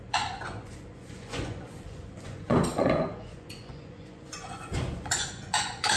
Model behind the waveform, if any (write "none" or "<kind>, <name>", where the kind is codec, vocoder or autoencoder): vocoder, Vocos